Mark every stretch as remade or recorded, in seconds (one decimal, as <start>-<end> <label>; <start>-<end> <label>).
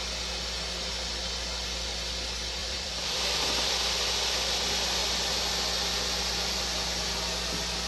0.0-2.6 recorded; 2.6-3.7 remade; 3.7-7.9 recorded